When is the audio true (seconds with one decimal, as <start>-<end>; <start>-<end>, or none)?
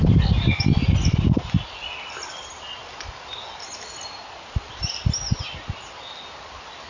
0.0-6.9